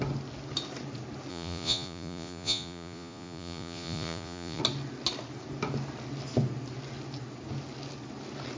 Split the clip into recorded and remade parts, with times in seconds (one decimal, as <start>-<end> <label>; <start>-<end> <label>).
0.0-1.3 recorded; 1.3-4.6 remade; 4.6-8.6 recorded